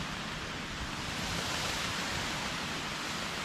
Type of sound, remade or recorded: recorded